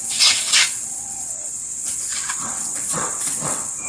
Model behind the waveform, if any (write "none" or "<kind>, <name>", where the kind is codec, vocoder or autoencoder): vocoder, WaveNeXt